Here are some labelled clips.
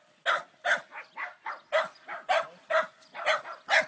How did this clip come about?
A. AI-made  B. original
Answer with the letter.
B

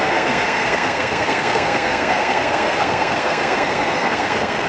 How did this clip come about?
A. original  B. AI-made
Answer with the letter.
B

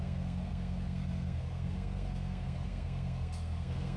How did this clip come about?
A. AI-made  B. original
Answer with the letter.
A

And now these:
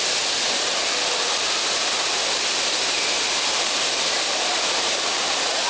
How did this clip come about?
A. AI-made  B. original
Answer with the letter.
B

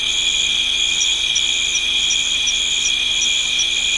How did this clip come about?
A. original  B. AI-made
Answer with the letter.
A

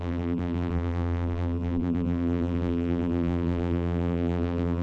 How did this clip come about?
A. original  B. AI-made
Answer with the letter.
B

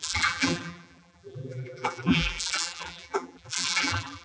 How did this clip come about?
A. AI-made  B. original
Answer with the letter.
A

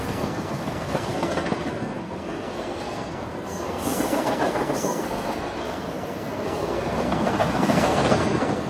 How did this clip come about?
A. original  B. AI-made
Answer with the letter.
B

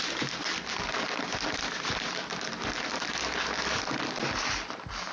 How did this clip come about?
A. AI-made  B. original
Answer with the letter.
B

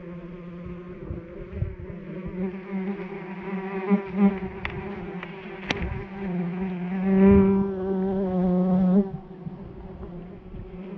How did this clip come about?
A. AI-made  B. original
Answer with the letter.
B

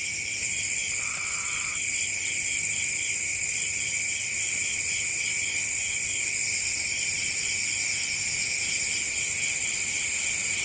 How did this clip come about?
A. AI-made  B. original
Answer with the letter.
B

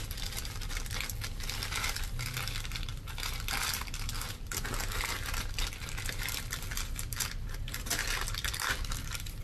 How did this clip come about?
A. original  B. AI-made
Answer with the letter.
A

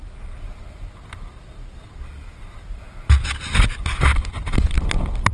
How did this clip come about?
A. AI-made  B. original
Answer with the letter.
B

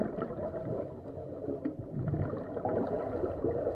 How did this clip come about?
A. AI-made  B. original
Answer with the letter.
B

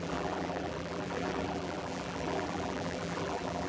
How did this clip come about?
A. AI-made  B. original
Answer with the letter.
A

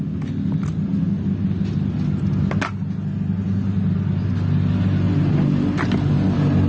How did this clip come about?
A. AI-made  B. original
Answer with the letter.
B